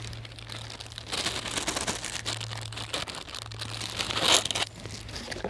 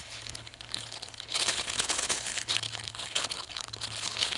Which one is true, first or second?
first